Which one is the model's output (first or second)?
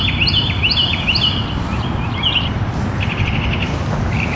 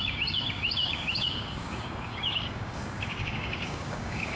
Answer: second